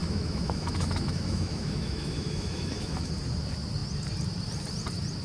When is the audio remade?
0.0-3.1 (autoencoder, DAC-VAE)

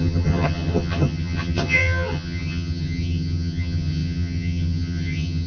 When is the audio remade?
0.0-5.5 (vocoder, HiFi-GAN)